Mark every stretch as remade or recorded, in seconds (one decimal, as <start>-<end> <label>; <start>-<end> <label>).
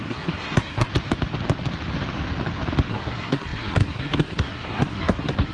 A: 0.0-0.9 remade; 0.9-2.9 recorded; 2.9-5.5 remade